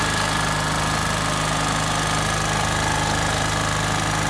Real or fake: real